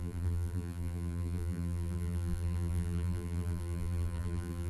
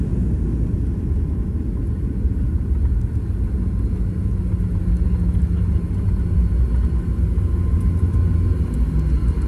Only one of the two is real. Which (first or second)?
second